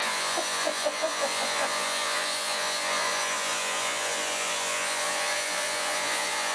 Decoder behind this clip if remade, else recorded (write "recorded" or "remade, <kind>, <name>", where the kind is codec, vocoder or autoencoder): remade, vocoder, Vocos